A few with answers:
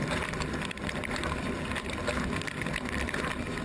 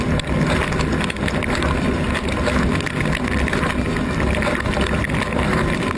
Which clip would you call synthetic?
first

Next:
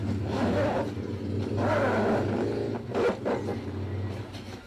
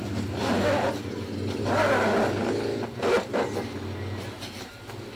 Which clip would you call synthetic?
first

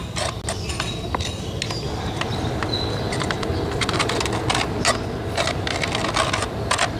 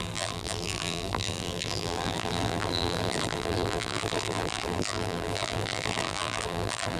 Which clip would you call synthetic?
second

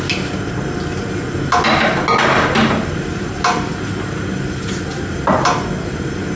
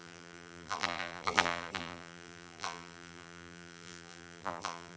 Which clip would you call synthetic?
second